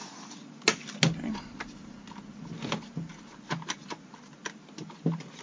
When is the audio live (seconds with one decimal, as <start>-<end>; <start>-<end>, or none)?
0.6-5.4